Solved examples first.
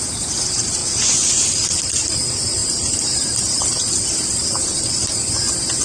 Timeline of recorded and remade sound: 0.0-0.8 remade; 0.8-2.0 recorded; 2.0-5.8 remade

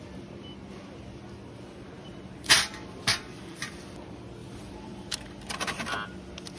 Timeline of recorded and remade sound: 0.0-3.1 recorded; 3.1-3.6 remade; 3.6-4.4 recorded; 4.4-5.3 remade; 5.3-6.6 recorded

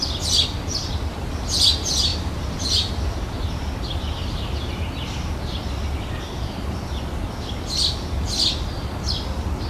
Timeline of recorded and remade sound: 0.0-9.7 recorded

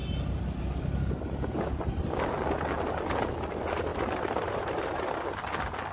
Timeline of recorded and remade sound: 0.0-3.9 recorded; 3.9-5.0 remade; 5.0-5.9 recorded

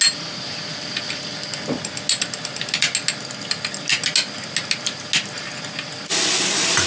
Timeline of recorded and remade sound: 0.0-6.9 recorded